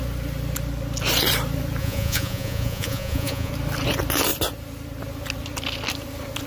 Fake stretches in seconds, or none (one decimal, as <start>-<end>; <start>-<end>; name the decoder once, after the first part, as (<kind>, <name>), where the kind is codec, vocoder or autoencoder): 1.8-3.5 (vocoder, Vocos)